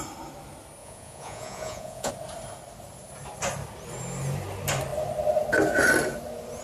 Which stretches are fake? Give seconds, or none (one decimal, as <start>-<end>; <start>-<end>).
0.8-2.1